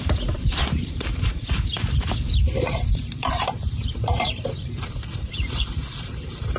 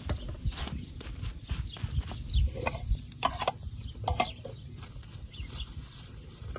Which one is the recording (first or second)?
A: second